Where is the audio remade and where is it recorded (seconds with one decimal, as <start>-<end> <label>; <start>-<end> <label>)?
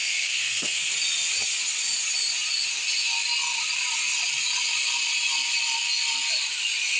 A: 0.0-0.9 remade; 0.9-7.0 recorded